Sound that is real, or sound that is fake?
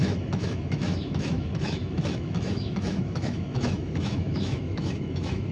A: fake